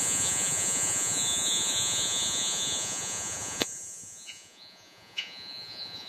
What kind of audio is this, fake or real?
fake